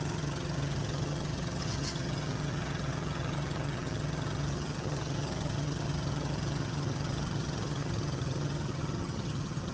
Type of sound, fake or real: fake